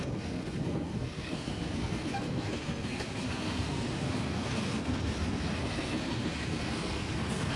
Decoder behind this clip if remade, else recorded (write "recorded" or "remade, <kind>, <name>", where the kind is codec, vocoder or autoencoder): remade, codec, SNAC